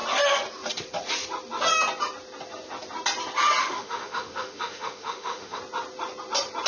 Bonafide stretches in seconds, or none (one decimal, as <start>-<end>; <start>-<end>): 0.0-3.6; 5.6-6.7